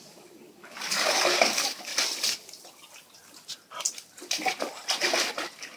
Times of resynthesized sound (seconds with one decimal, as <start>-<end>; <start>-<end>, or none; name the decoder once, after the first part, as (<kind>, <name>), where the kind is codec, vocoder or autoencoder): 0.0-1.9 (codec, DAC)